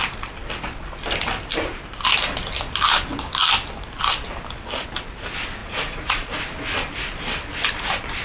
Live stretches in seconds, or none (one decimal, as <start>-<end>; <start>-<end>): 0.0-5.6; 6.4-8.2